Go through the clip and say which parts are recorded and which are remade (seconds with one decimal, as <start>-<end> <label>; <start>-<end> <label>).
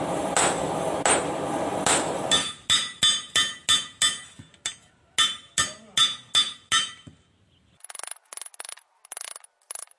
0.0-10.0 recorded